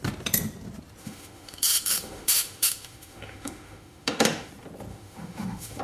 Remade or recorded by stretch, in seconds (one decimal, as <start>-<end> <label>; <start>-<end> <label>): 0.0-1.0 recorded; 1.0-4.5 remade; 4.5-4.9 recorded; 4.9-5.8 remade

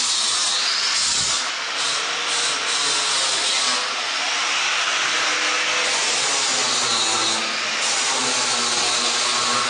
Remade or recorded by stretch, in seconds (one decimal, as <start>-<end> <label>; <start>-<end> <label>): 0.0-9.7 recorded

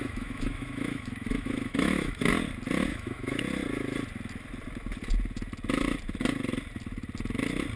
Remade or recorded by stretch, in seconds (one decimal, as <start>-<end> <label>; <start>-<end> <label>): 0.0-2.3 remade; 2.3-2.9 recorded; 2.9-3.4 remade; 3.4-7.8 recorded

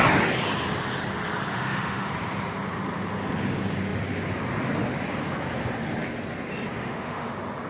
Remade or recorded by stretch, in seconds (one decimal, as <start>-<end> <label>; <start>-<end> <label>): 0.0-1.5 recorded; 1.5-2.1 remade; 2.1-6.8 recorded; 6.8-7.3 remade; 7.3-7.7 recorded

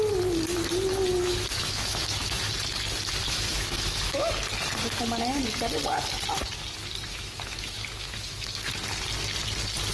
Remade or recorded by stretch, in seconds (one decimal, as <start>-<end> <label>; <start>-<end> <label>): 0.0-1.2 recorded; 1.2-2.5 remade; 2.5-3.2 recorded; 3.2-4.3 remade; 4.3-7.1 recorded; 7.1-8.7 remade; 8.7-9.9 recorded

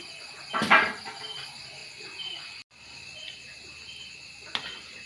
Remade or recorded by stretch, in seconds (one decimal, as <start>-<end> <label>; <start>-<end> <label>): 0.0-5.1 recorded

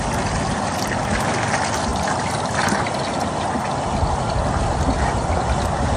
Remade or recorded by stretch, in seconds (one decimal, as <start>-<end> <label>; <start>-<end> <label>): 0.0-6.0 recorded

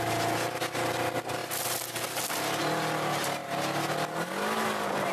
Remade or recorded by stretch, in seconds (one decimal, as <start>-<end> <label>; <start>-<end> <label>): 0.0-5.1 recorded